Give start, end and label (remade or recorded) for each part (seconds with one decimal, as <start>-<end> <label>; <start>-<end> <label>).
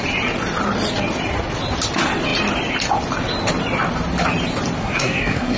0.0-4.8 recorded; 4.8-5.6 remade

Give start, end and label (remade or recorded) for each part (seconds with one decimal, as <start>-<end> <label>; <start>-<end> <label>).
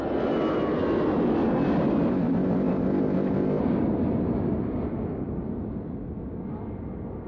0.0-2.1 recorded; 2.1-3.6 remade; 3.6-7.3 recorded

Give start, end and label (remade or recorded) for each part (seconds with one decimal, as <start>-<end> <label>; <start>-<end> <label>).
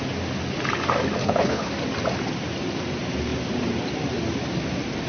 0.0-1.2 recorded; 1.2-1.7 remade; 1.7-5.1 recorded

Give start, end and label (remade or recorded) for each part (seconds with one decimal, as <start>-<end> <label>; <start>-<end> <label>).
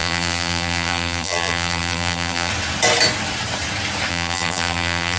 0.0-2.5 remade; 2.5-4.1 recorded; 4.1-5.2 remade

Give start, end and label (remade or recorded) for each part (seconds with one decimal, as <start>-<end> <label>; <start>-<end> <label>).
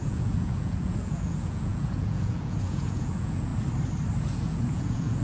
0.0-3.5 remade; 3.5-4.2 recorded; 4.2-5.2 remade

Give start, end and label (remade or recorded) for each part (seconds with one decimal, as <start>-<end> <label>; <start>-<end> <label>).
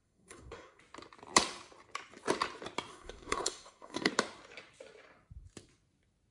0.0-0.8 remade; 0.8-2.9 recorded; 2.9-4.1 remade; 4.1-6.3 recorded